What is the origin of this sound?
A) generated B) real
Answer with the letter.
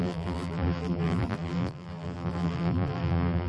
A